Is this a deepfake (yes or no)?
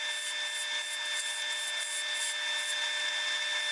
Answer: no